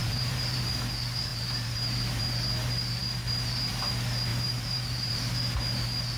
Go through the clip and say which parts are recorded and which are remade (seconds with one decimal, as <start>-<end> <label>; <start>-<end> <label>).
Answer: 0.0-0.6 remade; 0.6-1.3 recorded; 1.3-2.2 remade; 2.2-4.3 recorded; 4.3-5.1 remade; 5.1-6.2 recorded